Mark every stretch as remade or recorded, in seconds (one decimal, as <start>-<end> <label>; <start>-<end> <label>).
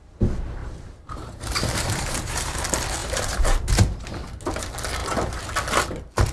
0.0-0.6 recorded; 0.6-2.6 remade; 2.6-3.0 recorded; 3.0-3.7 remade; 3.7-6.3 recorded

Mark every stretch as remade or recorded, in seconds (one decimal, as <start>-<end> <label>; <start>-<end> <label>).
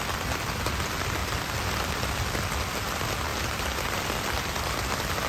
0.0-5.3 recorded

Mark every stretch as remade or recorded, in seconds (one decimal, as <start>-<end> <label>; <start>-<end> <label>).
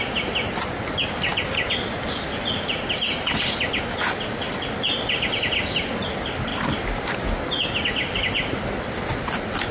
0.0-9.7 recorded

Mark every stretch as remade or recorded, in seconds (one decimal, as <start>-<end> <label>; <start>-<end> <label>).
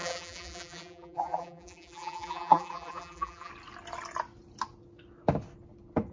0.0-3.5 remade; 3.5-6.1 recorded